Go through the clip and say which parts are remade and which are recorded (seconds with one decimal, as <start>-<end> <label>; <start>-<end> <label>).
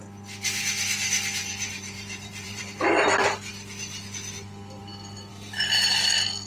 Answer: 0.0-1.4 recorded; 1.4-2.6 remade; 2.6-5.3 recorded; 5.3-6.1 remade; 6.1-6.5 recorded